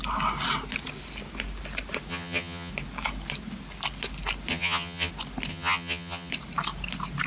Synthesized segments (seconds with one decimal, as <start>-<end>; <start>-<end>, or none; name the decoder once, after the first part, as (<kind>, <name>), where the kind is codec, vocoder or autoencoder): 2.1-2.7 (vocoder, HiFi-GAN); 4.5-5.1; 5.5-6.3